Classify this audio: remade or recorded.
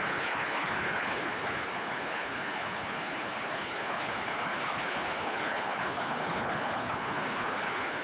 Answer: remade